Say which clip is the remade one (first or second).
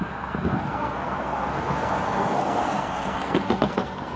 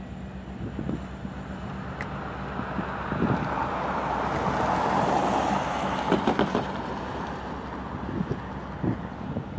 first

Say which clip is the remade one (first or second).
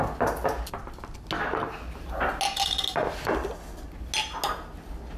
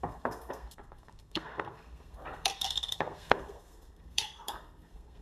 second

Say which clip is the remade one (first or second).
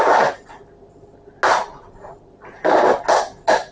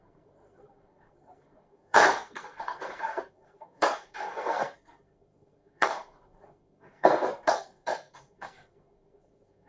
second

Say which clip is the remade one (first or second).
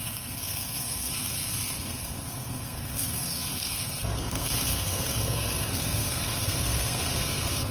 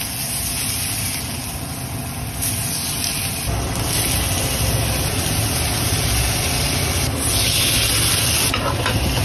first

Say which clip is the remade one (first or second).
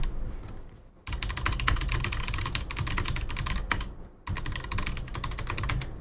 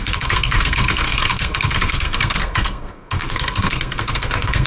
second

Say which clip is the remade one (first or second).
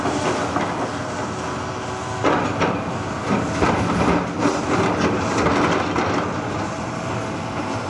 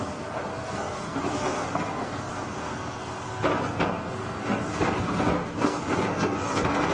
second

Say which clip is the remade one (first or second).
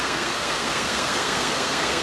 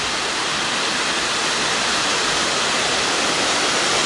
first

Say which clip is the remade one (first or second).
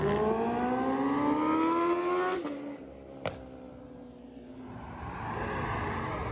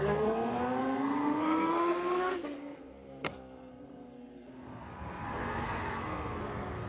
second